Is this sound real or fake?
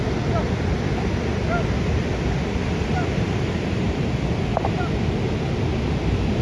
real